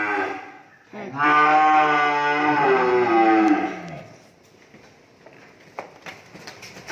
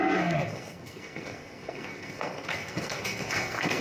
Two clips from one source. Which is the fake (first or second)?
second